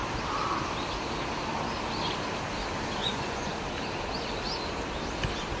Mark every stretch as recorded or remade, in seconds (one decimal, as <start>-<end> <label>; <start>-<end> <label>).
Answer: 0.0-3.0 recorded; 3.0-3.5 remade; 3.5-5.6 recorded